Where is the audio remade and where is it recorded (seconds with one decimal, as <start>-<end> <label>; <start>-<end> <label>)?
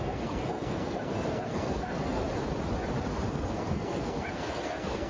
0.0-2.2 remade; 2.2-3.3 recorded; 3.3-5.1 remade